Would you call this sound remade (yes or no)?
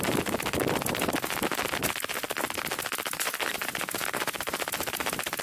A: no